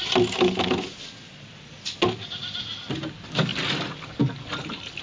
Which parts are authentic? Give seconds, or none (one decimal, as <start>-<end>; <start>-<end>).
0.0-5.0